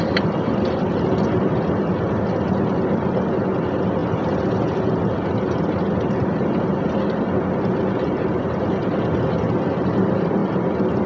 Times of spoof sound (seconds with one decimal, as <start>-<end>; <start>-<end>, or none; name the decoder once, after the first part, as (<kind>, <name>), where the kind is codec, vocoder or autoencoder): none